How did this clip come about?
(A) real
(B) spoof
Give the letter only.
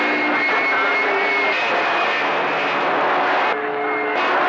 A